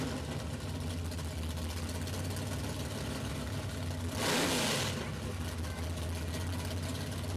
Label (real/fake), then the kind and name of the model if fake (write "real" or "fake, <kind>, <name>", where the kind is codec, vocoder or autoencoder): real